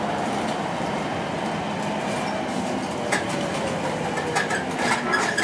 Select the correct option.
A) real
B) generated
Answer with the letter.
A